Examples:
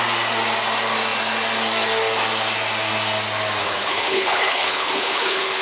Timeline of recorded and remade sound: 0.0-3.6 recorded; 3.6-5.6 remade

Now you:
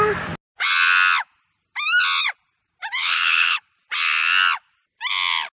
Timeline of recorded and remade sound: 0.0-3.0 recorded; 3.0-3.6 remade; 3.6-5.6 recorded

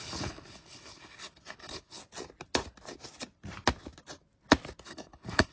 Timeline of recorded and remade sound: 0.0-2.0 remade; 2.0-4.8 recorded; 4.8-5.5 remade

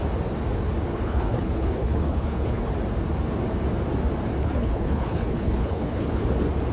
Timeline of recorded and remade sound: 0.0-0.9 recorded; 0.9-2.7 remade; 2.7-4.4 recorded; 4.4-6.2 remade; 6.2-6.7 recorded